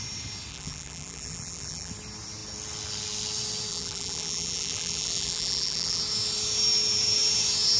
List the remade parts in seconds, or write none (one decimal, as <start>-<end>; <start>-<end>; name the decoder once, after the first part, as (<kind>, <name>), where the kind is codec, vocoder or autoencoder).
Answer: 0.5-1.9 (vocoder, BigVGAN v2); 3.7-6.0